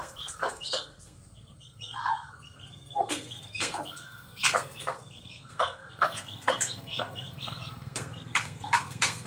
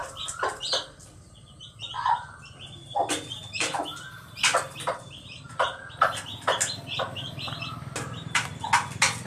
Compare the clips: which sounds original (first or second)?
second